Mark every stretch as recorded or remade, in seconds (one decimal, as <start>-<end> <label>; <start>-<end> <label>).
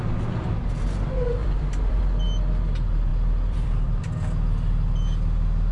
0.0-1.4 recorded; 1.4-2.0 remade; 2.0-3.1 recorded; 3.1-4.0 remade; 4.0-5.7 recorded